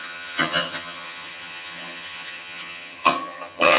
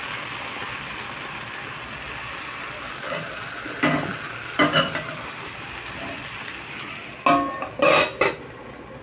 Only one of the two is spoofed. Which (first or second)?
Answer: first